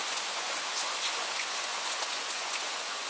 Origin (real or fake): fake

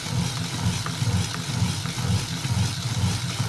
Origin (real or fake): real